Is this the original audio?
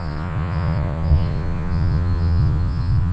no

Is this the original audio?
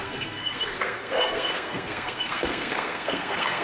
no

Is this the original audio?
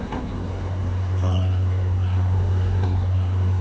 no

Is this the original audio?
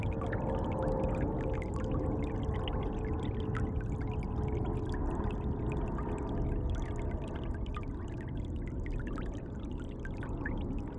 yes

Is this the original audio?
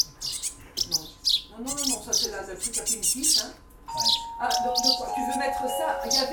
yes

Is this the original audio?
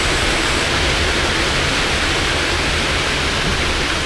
yes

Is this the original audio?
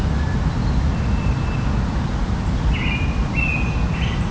yes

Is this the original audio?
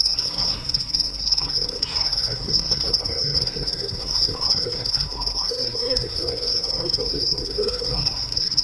no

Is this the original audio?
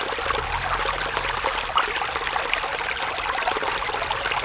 yes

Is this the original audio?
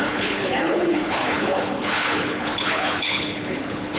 no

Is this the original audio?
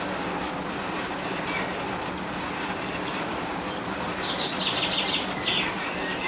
yes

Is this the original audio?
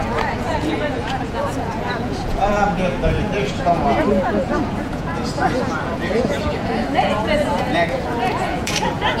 no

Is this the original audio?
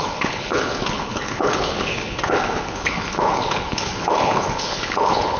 no